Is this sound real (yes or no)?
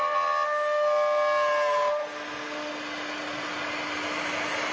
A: yes